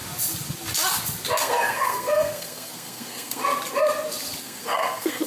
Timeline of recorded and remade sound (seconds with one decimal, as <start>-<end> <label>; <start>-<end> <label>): 0.0-1.4 recorded; 1.4-3.4 remade; 3.4-4.4 recorded; 4.4-5.3 remade